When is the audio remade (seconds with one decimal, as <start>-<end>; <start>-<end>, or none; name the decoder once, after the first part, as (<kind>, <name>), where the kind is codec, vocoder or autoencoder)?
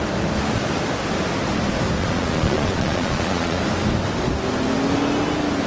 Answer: 2.0-3.6 (vocoder, Vocos)